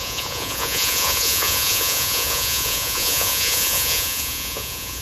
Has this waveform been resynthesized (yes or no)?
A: yes